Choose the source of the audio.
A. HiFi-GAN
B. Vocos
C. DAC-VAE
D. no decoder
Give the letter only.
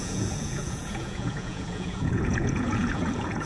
B